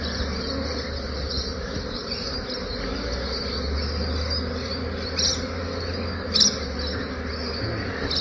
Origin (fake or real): real